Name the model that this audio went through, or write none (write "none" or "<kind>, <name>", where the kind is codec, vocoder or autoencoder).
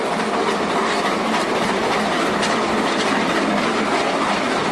none